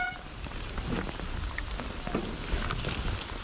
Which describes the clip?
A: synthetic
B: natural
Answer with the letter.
B